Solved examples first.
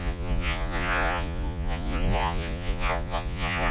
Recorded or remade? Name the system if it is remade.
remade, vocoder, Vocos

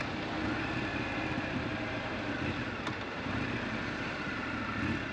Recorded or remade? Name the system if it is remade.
recorded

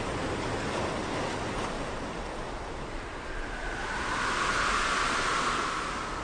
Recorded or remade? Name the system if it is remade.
recorded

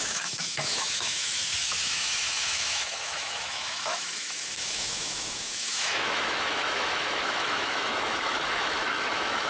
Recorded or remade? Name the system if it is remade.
remade, autoencoder, DAC-VAE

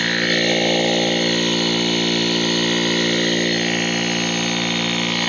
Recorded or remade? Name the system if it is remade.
recorded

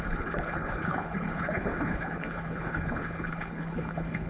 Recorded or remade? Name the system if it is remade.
remade, codec, HILCodec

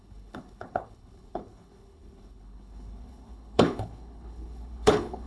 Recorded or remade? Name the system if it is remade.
remade, codec, HILCodec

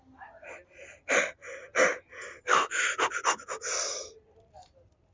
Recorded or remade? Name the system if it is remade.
recorded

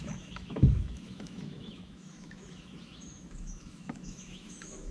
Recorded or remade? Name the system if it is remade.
remade, autoencoder, DAC-VAE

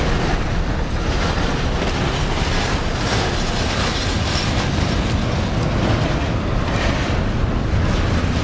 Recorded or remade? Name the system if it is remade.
recorded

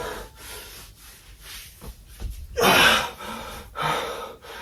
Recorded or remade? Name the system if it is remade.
recorded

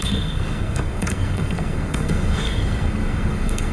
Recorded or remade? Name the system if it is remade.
remade, codec, SNAC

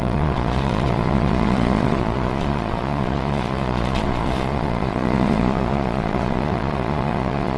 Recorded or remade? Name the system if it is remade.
remade, vocoder, Vocos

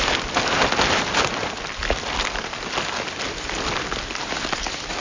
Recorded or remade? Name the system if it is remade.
recorded